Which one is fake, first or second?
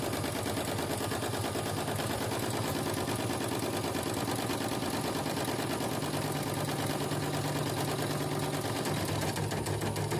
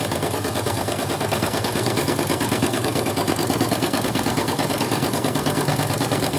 second